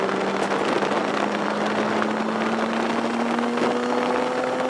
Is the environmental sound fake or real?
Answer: real